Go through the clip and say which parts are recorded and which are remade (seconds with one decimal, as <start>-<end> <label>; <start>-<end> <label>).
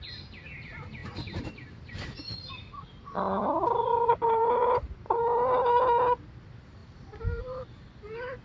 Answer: 0.0-1.0 recorded; 1.0-2.5 remade; 2.5-3.9 recorded; 3.9-5.2 remade; 5.2-6.8 recorded; 6.8-7.4 remade; 7.4-8.4 recorded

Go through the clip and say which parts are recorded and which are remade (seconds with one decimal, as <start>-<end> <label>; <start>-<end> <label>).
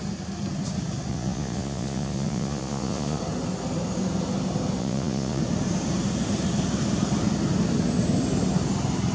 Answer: 0.0-1.1 recorded; 1.1-3.2 remade; 3.2-4.8 recorded; 4.8-5.4 remade; 5.4-9.1 recorded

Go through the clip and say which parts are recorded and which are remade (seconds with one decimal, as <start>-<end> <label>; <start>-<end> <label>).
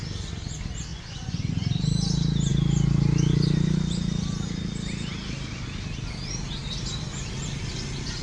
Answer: 0.0-0.9 recorded; 0.9-1.5 remade; 1.5-8.2 recorded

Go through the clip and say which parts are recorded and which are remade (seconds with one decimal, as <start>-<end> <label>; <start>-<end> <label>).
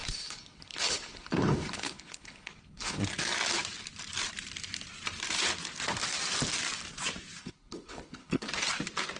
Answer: 0.0-3.0 remade; 3.0-7.4 recorded; 7.4-8.5 remade; 8.5-9.2 recorded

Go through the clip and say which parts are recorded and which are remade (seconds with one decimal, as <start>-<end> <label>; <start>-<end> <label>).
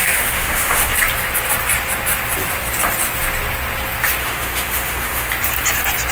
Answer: 0.0-0.9 remade; 0.9-4.2 recorded; 4.2-5.3 remade; 5.3-6.1 recorded